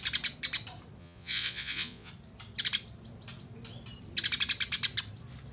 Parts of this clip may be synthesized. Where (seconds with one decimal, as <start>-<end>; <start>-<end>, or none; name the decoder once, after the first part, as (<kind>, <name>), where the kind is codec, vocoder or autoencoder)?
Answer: 1.0-2.1 (vocoder, Vocos)

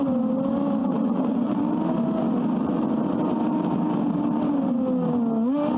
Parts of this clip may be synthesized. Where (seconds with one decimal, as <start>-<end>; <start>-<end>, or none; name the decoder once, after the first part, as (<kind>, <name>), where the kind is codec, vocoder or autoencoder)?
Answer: 0.8-1.6 (vocoder, WaveNeXt)

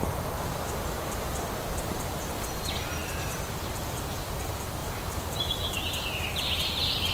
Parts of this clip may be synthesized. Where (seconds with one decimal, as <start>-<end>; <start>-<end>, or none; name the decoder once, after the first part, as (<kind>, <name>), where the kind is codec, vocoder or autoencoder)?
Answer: 4.8-5.5 (vocoder, BigVGAN v2)

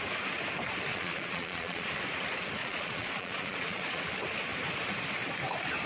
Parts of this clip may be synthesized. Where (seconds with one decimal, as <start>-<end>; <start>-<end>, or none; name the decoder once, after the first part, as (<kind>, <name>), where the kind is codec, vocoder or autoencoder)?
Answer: 0.9-1.9 (vocoder, Vocos); 2.6-4.0

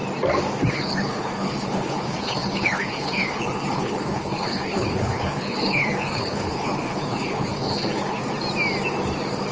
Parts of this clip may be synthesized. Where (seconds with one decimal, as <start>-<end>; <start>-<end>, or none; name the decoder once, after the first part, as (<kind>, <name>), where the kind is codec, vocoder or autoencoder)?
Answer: 0.7-8.2 (codec, HILCodec)